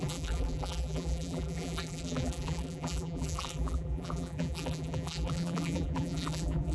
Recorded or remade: remade